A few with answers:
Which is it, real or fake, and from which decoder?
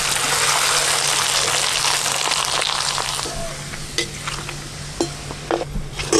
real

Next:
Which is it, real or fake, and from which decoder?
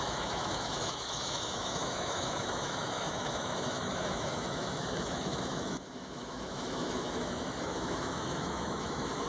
fake, autoencoder, DAC-VAE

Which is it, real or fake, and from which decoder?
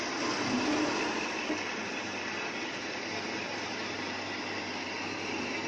real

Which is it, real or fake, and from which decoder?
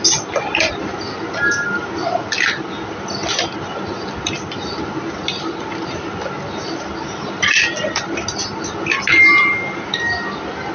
real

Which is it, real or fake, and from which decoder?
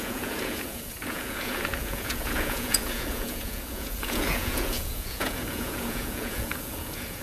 fake, vocoder, Vocos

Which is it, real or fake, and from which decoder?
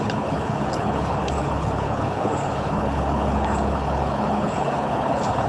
fake, codec, HILCodec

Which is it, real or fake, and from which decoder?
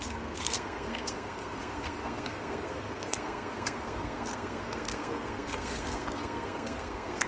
fake, codec, SNAC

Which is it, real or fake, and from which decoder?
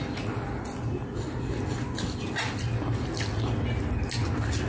real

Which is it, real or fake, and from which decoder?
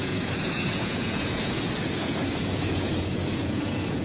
fake, vocoder, Vocos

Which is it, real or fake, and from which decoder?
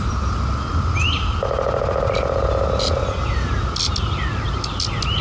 real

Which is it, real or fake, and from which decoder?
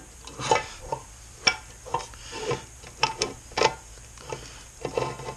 real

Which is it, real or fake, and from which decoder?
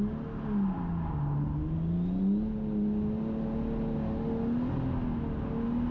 real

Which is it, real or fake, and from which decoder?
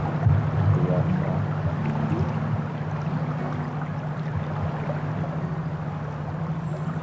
real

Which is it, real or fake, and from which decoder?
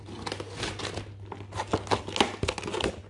real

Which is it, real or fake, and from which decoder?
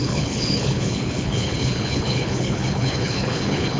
fake, codec, HILCodec